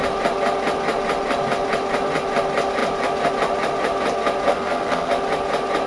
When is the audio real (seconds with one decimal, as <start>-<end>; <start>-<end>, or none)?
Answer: 0.0-4.5; 5.1-5.9